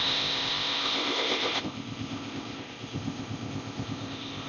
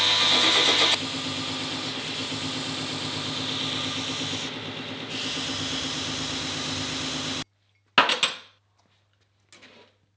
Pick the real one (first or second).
second